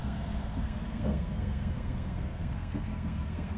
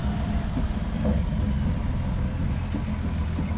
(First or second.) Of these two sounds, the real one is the second